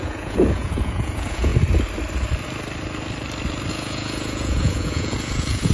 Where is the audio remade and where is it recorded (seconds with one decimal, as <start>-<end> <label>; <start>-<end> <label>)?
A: 0.0-1.5 remade; 1.5-3.7 recorded; 3.7-5.7 remade